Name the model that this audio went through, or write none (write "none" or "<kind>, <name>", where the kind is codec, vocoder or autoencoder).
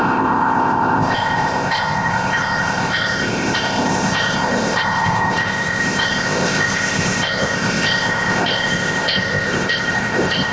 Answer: codec, ZipCodec